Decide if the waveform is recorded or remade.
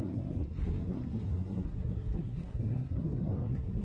remade